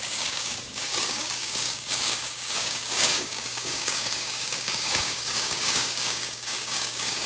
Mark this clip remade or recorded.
remade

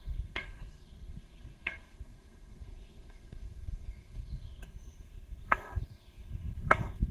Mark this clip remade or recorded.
remade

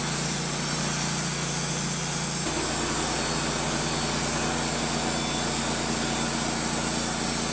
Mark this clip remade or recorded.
recorded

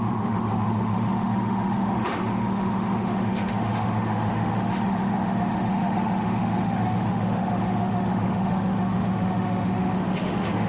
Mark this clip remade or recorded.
remade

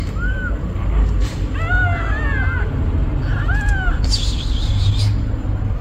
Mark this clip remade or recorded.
recorded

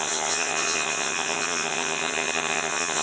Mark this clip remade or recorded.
remade